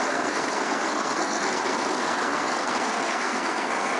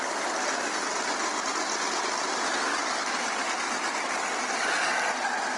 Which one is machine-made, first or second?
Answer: first